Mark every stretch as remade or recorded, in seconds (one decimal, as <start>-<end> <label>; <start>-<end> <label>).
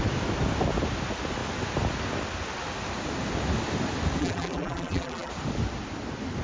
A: 0.0-4.2 recorded; 4.2-5.3 remade; 5.3-6.4 recorded